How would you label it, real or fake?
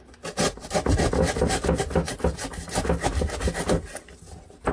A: real